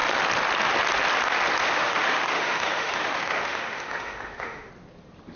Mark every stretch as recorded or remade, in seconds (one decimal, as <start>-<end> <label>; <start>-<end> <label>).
0.0-1.6 recorded; 1.6-4.7 remade; 4.7-5.4 recorded